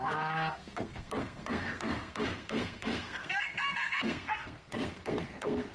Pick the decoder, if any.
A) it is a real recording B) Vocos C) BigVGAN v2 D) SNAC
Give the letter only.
D